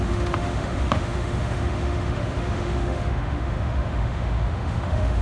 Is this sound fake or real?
fake